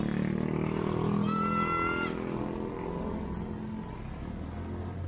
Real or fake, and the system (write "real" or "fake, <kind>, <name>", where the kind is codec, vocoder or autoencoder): real